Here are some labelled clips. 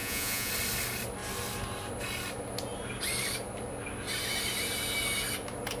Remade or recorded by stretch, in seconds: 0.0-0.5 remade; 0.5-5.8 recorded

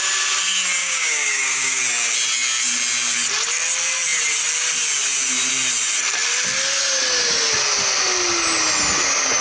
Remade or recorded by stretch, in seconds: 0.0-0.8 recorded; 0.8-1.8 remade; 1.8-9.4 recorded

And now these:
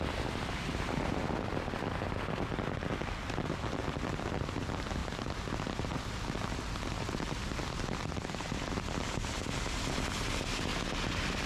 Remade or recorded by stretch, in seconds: 0.0-11.5 recorded

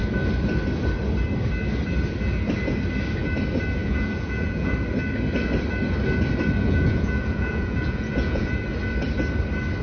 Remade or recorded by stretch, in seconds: 0.0-3.8 recorded; 3.8-4.7 remade; 4.7-6.6 recorded; 6.6-8.6 remade; 8.6-9.8 recorded